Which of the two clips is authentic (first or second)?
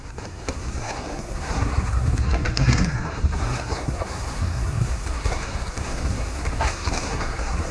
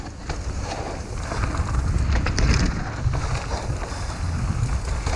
second